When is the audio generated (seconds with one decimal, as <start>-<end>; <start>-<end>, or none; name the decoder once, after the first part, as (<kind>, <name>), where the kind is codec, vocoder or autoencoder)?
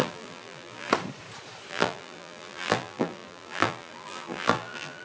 0.0-0.9 (vocoder, BigVGAN v2); 1.7-5.0